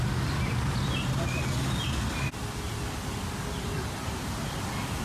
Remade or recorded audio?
recorded